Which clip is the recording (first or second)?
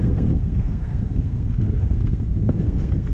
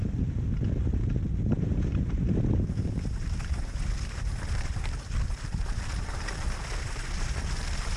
second